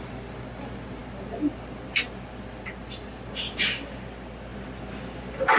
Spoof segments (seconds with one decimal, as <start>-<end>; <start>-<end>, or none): none